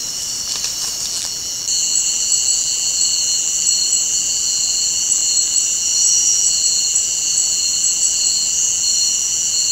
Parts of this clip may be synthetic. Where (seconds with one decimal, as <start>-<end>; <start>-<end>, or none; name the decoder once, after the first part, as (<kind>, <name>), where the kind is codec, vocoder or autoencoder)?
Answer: 1.1-9.7 (vocoder, BigVGAN v2)